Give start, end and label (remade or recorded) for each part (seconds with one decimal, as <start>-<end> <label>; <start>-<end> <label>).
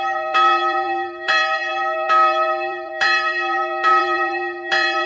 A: 0.0-5.1 remade